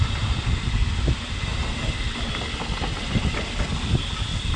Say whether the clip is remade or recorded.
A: recorded